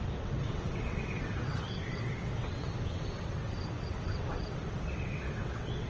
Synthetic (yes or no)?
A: yes